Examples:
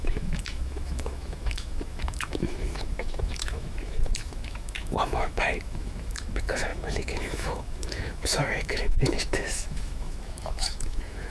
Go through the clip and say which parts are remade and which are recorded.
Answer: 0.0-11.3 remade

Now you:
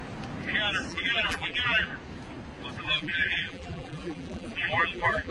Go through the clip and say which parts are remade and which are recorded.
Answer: 0.0-0.9 recorded; 0.9-1.9 remade; 1.9-2.8 recorded; 2.8-5.3 remade

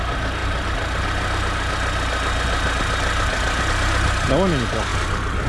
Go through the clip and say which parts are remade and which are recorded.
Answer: 0.0-5.5 recorded

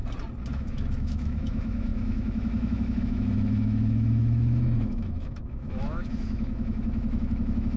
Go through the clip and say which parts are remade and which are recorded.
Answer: 0.0-0.5 recorded; 0.5-7.8 remade

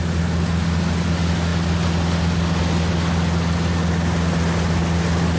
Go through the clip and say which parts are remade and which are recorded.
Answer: 0.0-5.4 recorded

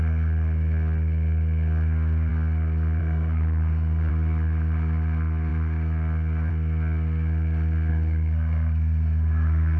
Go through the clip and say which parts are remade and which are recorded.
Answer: 0.0-3.0 recorded; 3.0-4.1 remade; 4.1-7.9 recorded; 7.9-9.8 remade

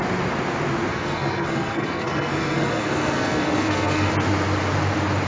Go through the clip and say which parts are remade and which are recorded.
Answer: 0.0-0.9 recorded; 0.9-4.1 remade; 4.1-5.3 recorded